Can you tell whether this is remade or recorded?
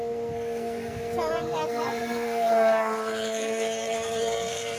remade